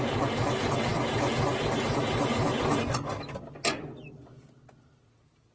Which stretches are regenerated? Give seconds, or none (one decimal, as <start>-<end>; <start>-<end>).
none